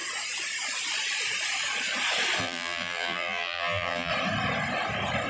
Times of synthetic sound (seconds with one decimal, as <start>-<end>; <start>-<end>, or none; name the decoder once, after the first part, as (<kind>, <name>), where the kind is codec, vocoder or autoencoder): 2.4-4.1 (vocoder, BigVGAN v2)